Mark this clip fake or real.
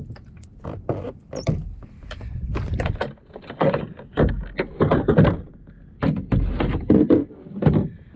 real